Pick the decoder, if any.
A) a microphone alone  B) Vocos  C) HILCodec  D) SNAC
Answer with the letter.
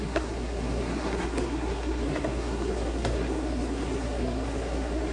D